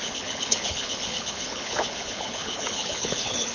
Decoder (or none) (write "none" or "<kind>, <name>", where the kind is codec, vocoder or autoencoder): codec, HILCodec